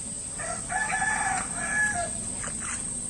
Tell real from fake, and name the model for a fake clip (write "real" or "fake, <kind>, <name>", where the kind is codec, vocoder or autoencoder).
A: real